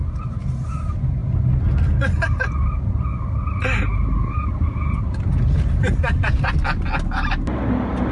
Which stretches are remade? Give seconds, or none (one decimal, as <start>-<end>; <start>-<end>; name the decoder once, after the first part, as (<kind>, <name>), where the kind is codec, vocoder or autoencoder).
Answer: none